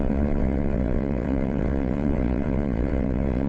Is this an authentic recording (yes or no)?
no